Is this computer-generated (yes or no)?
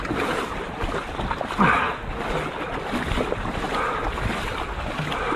no